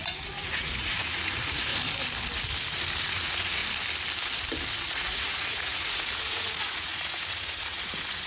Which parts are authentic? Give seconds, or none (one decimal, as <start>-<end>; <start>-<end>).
1.7-3.1; 3.6-4.9